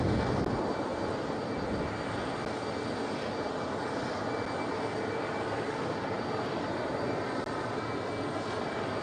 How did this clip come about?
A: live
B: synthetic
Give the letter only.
A